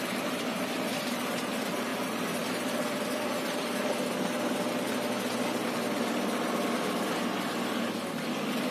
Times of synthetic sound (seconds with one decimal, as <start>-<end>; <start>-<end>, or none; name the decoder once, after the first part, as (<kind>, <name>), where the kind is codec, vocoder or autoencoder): 1.9-6.2 (vocoder, BigVGAN v2)